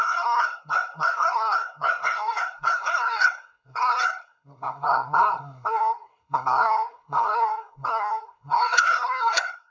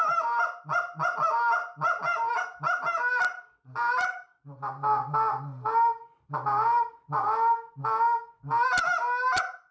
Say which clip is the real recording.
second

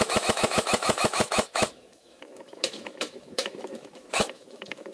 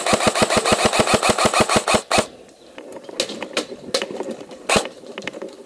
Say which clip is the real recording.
second